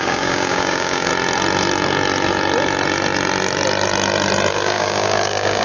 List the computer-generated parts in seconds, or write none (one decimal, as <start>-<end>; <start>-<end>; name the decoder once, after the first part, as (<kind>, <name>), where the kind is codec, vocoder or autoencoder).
0.0-1.1 (codec, DAC); 4.5-5.6